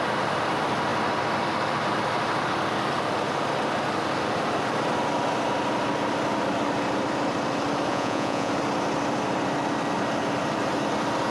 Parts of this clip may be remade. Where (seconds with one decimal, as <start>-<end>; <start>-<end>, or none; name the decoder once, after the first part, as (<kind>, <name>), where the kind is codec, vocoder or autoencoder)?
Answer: 7.9-8.5 (vocoder, Vocos)